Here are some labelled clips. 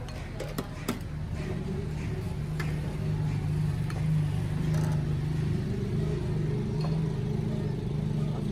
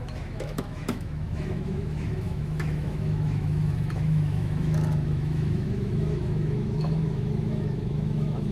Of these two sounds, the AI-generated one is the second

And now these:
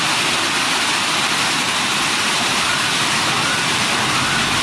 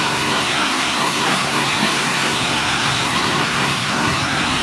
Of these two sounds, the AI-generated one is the second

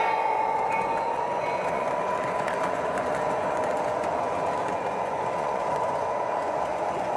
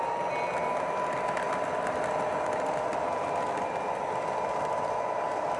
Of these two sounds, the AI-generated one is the first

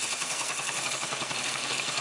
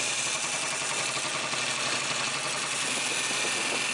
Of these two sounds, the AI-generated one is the first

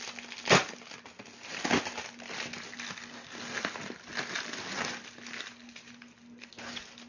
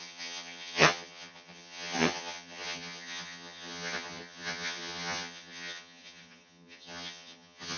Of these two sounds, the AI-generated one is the second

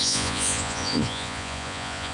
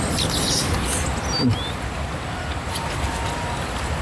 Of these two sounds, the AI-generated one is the first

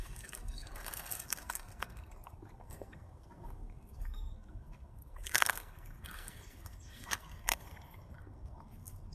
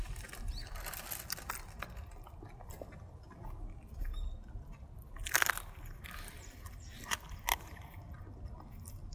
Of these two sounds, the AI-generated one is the first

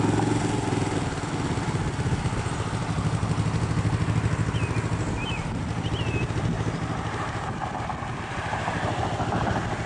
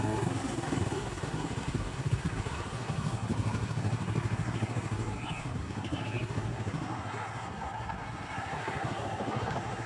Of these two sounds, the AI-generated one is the second